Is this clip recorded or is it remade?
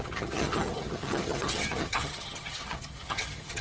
remade